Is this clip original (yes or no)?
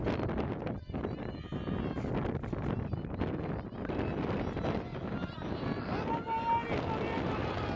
yes